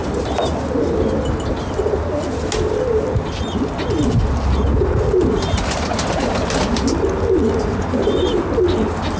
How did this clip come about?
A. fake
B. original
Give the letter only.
B